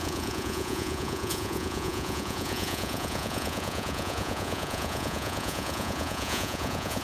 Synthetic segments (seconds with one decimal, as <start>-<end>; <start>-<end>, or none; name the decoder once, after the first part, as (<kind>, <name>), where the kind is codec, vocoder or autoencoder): 0.0-7.0 (vocoder, Vocos)